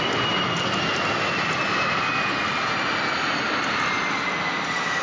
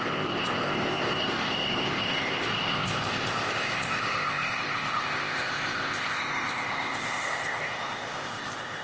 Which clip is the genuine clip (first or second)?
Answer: first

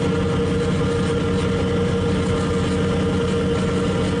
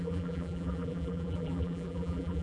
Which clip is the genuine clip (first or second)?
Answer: first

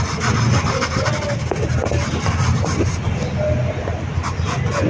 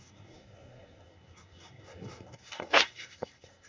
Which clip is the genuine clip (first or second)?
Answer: first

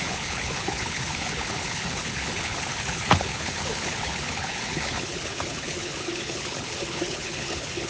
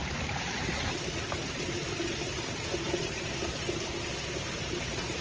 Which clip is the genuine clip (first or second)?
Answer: second